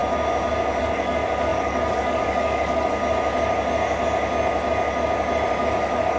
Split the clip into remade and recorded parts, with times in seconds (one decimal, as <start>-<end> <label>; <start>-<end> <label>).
0.0-0.8 recorded; 0.8-3.0 remade; 3.0-5.5 recorded; 5.5-6.2 remade